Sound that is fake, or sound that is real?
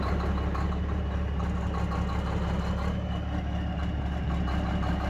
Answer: real